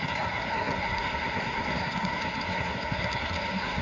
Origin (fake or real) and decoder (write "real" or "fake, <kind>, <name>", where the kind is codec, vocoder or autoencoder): fake, codec, SNAC